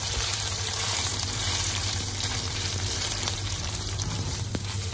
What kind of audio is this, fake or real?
fake